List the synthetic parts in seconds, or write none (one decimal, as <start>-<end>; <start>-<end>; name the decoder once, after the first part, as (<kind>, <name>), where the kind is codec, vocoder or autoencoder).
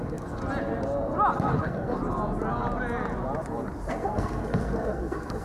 0.0-0.4 (codec, SNAC); 1.6-2.0; 3.9-5.4